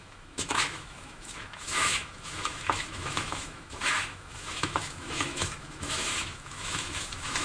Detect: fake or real fake